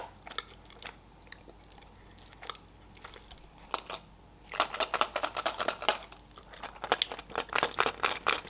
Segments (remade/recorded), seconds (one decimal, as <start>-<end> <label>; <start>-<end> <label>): 0.0-8.5 recorded